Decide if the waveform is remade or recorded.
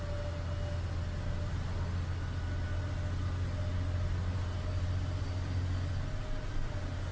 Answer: recorded